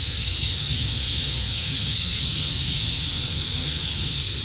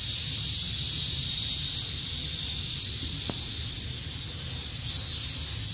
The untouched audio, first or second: second